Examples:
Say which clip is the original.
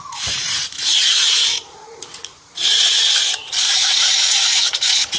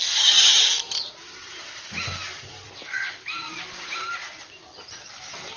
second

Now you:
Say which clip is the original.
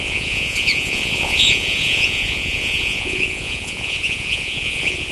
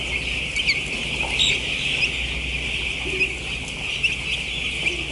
second